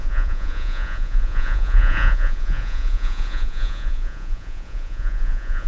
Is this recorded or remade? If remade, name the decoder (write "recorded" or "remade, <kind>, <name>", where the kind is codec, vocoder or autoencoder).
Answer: remade, vocoder, Vocos